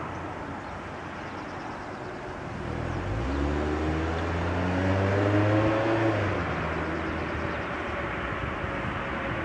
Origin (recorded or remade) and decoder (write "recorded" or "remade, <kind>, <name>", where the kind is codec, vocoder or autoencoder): recorded